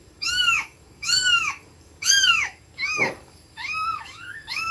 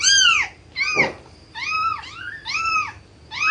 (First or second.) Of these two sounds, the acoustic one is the second